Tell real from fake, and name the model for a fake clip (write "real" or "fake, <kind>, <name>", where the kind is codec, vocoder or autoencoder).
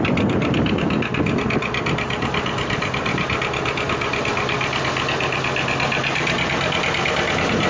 real